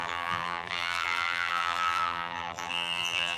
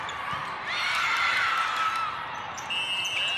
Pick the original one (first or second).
second